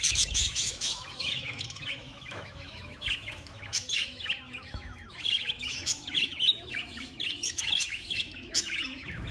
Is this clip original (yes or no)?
no